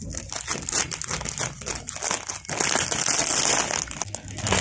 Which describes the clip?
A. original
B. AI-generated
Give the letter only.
A